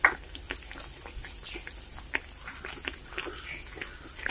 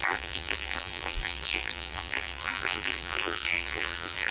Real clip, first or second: first